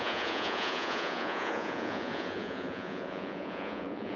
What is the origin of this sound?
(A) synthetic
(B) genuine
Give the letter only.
A